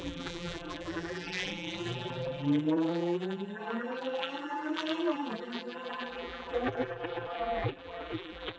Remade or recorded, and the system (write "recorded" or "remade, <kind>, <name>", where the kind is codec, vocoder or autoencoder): remade, vocoder, BigVGAN v2